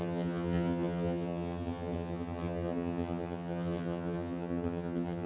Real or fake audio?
fake